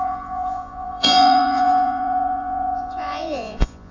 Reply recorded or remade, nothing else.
remade